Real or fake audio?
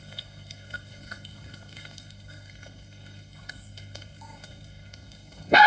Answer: fake